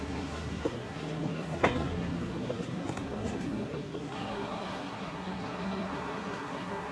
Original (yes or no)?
no